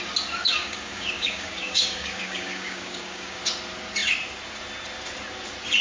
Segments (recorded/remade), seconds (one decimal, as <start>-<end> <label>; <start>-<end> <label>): 0.0-0.5 recorded; 0.5-3.4 remade; 3.4-5.8 recorded